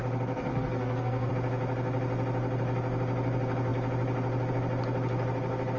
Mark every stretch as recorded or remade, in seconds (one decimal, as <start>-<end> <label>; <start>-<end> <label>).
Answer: 0.0-0.5 recorded; 0.5-1.3 remade; 1.3-5.8 recorded